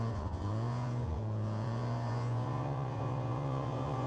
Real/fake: fake